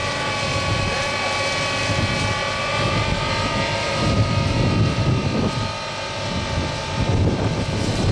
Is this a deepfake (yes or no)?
no